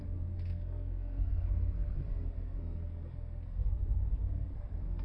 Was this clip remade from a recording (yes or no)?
yes